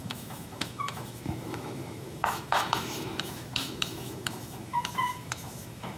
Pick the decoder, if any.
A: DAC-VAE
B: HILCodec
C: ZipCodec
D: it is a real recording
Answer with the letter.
A